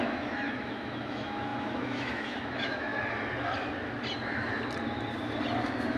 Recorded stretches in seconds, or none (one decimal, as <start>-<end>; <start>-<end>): 2.9-5.6